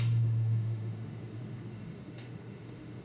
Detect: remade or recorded remade